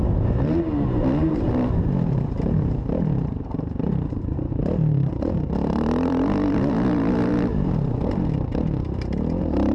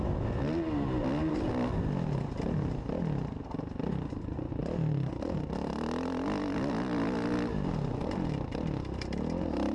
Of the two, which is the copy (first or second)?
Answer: first